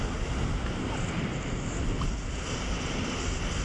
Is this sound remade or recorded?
recorded